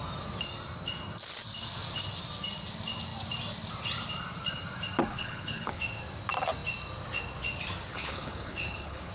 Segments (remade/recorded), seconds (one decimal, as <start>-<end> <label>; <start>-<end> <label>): 0.0-5.1 recorded; 5.1-5.8 remade; 5.8-7.9 recorded; 7.9-9.1 remade